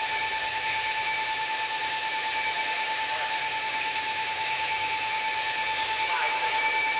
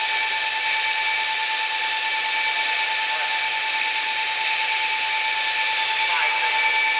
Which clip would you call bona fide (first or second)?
second